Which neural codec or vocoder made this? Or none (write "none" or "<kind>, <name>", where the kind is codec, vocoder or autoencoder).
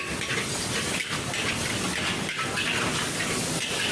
none